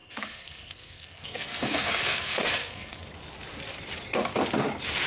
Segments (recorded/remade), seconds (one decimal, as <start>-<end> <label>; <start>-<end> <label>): 0.0-3.1 remade; 3.1-5.1 recorded